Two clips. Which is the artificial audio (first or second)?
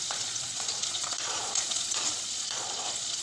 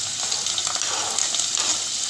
first